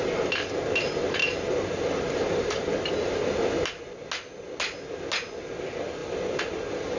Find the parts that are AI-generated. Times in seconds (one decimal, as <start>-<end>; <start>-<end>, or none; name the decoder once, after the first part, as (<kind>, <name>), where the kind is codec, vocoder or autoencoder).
6.0-7.0 (vocoder, BigVGAN v2)